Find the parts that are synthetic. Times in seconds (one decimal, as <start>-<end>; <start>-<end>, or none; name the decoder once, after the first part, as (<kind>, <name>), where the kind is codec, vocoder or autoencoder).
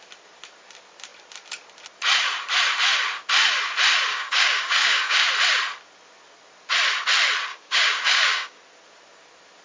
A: 4.1-5.3 (codec, DAC); 7.5-8.6